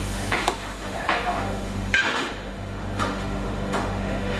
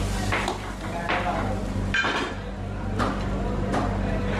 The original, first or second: second